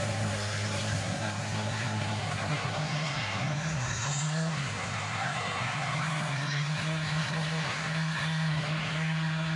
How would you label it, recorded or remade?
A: remade